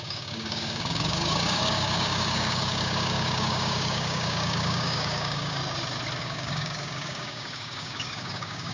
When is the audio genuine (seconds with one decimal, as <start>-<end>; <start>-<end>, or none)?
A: 5.6-6.2